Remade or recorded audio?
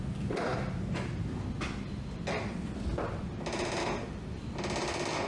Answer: recorded